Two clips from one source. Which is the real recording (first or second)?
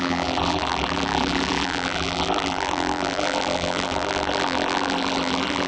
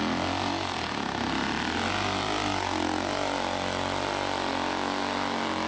second